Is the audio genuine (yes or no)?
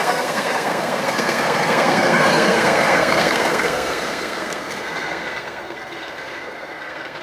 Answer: no